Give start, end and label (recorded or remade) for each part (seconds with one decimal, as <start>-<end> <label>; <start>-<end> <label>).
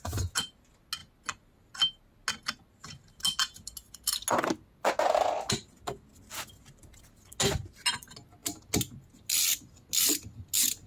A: 0.0-10.9 recorded